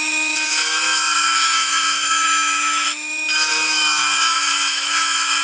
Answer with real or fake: fake